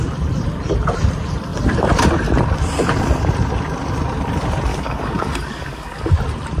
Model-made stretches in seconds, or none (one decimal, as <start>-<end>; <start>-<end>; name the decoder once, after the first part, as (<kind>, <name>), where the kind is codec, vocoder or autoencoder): 4.7-6.1 (codec, DAC)